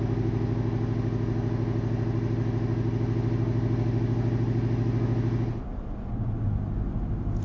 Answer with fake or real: real